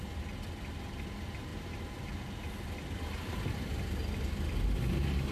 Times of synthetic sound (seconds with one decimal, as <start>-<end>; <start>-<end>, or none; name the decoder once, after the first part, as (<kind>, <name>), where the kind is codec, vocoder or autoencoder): none